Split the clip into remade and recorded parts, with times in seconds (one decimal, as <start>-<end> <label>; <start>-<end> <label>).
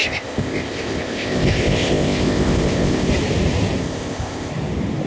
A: 0.0-3.1 remade; 3.1-3.8 recorded; 3.8-4.5 remade; 4.5-5.1 recorded